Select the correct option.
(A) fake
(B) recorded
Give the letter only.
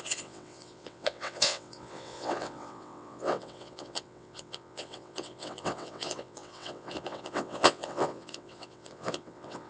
A